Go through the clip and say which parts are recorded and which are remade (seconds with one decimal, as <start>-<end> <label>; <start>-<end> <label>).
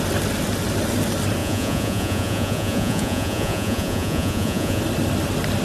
0.0-1.4 recorded; 1.4-4.8 remade; 4.8-5.6 recorded